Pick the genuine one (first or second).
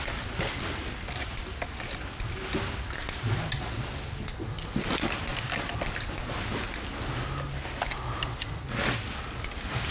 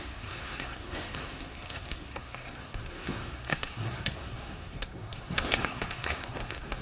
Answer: first